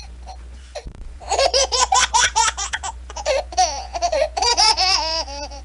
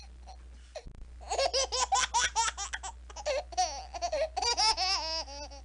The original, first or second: second